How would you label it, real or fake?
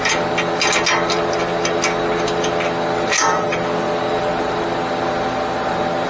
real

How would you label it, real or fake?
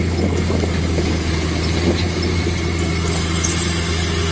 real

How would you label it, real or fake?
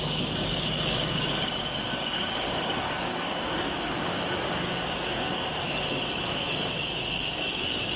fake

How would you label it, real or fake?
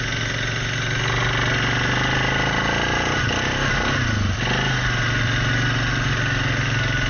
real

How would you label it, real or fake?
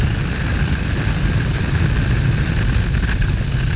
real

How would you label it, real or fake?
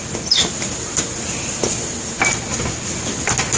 real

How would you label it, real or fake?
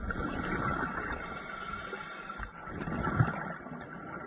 real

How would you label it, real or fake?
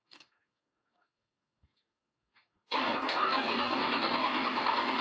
fake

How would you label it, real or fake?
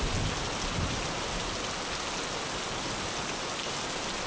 real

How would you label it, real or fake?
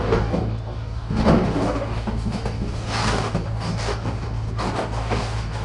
fake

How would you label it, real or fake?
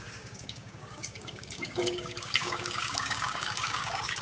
fake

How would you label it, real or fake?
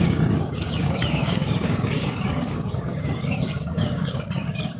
fake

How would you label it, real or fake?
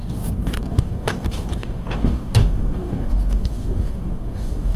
fake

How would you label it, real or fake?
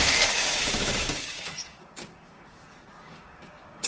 fake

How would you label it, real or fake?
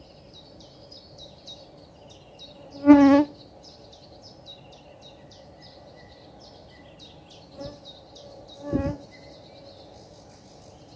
real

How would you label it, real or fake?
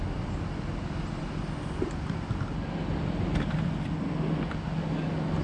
real